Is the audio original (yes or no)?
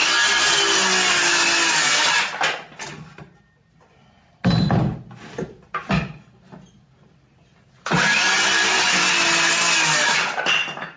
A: yes